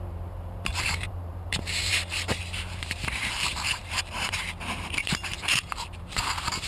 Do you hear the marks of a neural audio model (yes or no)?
yes